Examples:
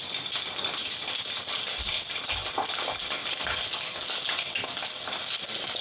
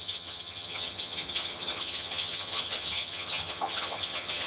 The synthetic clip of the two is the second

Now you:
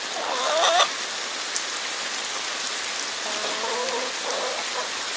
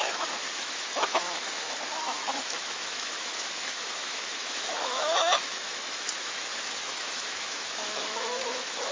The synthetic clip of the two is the second